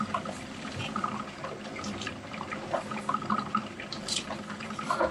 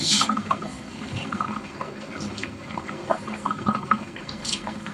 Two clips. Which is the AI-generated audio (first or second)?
second